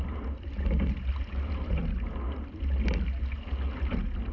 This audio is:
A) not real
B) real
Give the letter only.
B